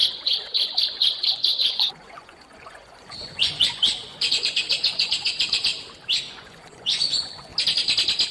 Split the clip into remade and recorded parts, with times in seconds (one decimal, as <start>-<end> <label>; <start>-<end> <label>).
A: 0.0-5.7 remade; 5.7-6.3 recorded; 6.3-7.5 remade; 7.5-8.3 recorded